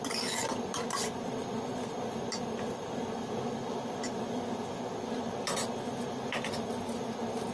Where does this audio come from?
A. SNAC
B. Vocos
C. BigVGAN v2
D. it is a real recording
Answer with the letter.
D